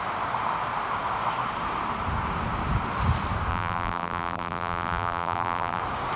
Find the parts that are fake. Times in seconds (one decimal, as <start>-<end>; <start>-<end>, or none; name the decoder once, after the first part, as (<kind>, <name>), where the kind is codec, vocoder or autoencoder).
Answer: 3.5-5.8 (vocoder, BigVGAN v2)